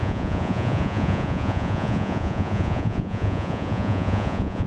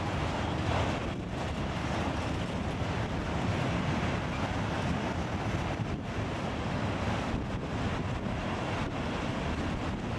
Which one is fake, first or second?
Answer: first